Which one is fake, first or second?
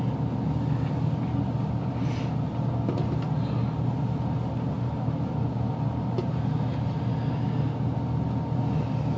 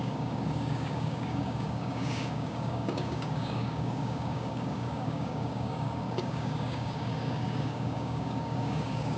second